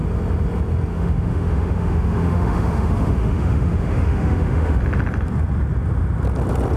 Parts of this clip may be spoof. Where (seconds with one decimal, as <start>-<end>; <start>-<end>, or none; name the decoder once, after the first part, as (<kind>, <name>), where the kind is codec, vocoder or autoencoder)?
0.9-4.8 (autoencoder, DAC-VAE)